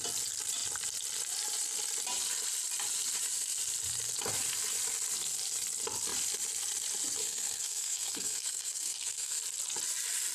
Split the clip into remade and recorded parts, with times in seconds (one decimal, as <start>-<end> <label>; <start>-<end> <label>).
0.0-7.2 recorded; 7.2-9.4 remade; 9.4-10.3 recorded

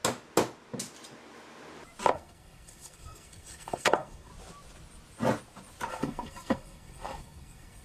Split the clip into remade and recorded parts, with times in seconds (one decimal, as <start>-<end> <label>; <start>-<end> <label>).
0.0-2.1 recorded; 2.1-4.3 remade; 4.3-5.9 recorded; 5.9-7.8 remade

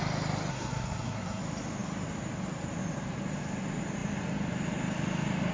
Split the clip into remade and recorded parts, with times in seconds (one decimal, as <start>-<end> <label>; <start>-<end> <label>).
0.0-0.5 recorded; 0.5-1.4 remade; 1.4-5.5 recorded

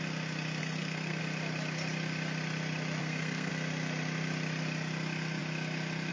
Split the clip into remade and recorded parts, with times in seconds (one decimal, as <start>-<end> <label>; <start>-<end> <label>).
0.0-0.6 recorded; 0.6-1.2 remade; 1.2-3.0 recorded; 3.0-3.5 remade; 3.5-6.1 recorded

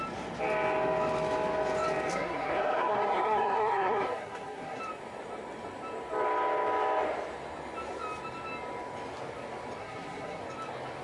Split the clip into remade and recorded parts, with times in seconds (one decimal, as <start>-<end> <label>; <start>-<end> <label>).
0.0-2.1 recorded; 2.1-4.8 remade; 4.8-9.8 recorded; 9.8-10.4 remade; 10.4-11.0 recorded

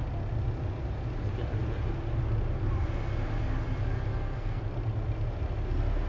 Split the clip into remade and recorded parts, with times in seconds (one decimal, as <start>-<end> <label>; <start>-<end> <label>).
0.0-4.1 recorded; 4.1-4.6 remade; 4.6-6.1 recorded

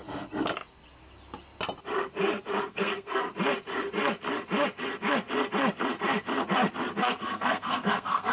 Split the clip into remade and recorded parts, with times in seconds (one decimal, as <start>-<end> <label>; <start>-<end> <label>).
0.0-2.6 recorded; 2.6-3.3 remade; 3.3-7.2 recorded; 7.2-8.3 remade

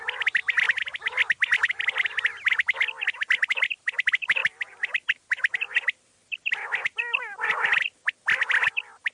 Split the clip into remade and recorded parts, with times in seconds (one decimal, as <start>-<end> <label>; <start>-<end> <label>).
0.0-9.1 recorded